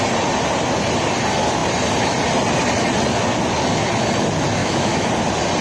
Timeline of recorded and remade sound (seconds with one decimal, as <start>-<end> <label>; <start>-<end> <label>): 0.0-4.6 recorded; 4.6-5.1 remade; 5.1-5.6 recorded